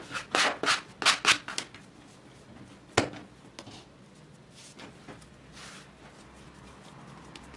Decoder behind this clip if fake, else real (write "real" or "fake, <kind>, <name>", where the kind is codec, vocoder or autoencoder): real